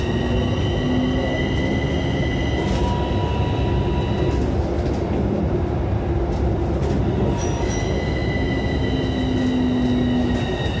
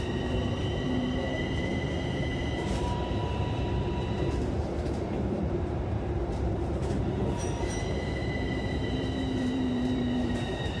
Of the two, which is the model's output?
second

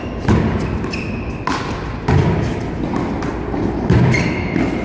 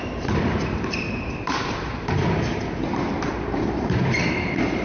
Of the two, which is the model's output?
second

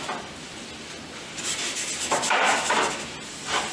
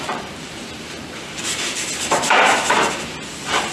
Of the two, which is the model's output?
second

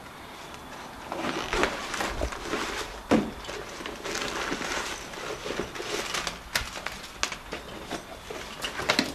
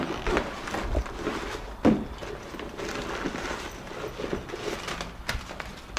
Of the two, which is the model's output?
second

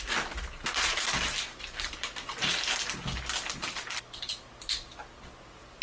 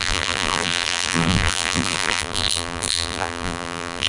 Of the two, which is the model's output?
second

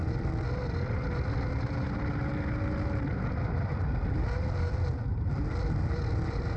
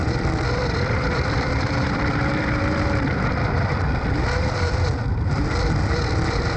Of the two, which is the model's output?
second